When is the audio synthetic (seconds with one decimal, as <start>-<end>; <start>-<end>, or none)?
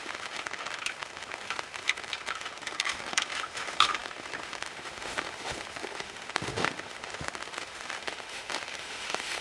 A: 0.0-9.4